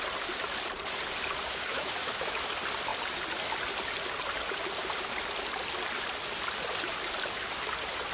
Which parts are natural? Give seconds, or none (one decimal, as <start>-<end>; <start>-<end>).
0.0-1.7; 2.5-8.1